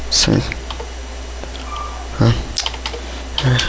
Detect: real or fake real